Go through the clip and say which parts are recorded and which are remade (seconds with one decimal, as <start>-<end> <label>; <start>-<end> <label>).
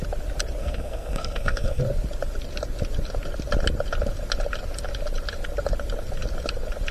0.0-0.6 recorded; 0.6-1.8 remade; 1.8-6.9 recorded